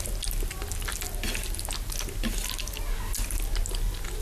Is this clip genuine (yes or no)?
yes